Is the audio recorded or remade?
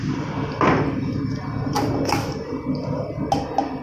recorded